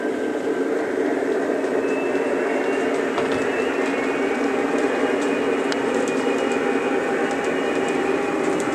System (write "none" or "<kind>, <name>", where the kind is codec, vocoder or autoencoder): vocoder, BigVGAN v2